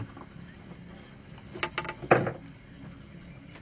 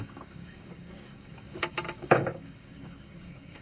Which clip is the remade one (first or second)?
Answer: second